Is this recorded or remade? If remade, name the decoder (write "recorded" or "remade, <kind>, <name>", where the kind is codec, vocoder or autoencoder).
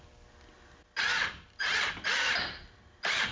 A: recorded